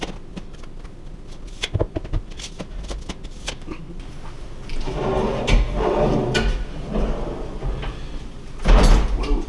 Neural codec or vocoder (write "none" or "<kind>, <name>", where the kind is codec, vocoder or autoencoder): none